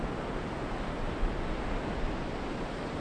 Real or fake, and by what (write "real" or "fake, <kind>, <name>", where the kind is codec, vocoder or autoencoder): real